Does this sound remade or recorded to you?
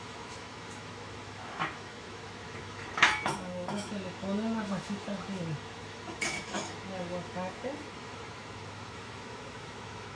remade